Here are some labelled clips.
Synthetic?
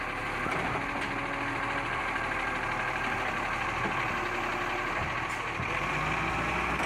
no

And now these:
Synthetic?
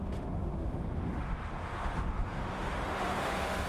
yes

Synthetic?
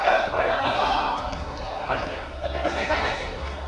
yes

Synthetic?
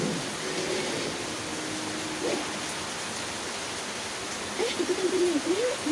no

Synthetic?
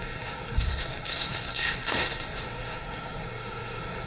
yes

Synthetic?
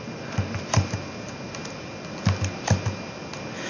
no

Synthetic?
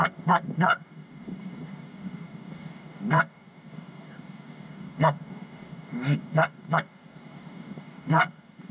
yes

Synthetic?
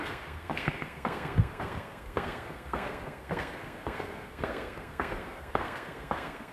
yes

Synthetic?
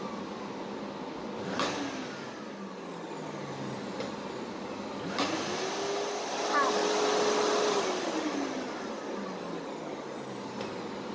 no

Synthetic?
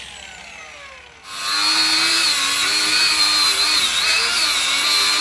no